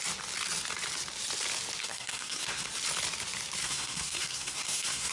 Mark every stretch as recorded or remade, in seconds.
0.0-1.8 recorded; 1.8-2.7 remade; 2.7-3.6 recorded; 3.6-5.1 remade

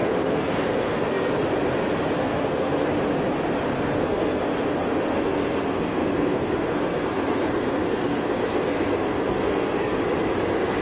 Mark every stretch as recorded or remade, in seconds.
0.0-1.3 remade; 1.3-2.2 recorded; 2.2-2.9 remade; 2.9-3.7 recorded; 3.7-4.4 remade; 4.4-5.1 recorded; 5.1-10.0 remade; 10.0-10.8 recorded

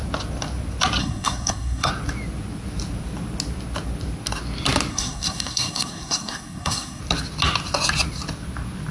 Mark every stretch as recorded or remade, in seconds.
0.0-1.0 recorded; 1.0-1.9 remade; 1.9-4.9 recorded; 4.9-7.0 remade; 7.0-8.9 recorded

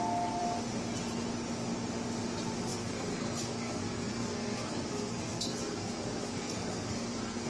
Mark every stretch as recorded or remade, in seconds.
0.0-2.7 recorded; 2.7-7.5 remade

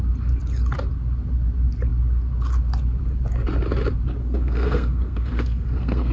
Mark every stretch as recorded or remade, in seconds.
0.0-4.2 recorded; 4.2-6.1 remade